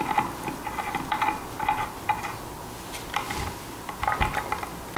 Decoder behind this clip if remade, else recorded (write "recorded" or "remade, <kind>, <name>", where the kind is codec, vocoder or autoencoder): recorded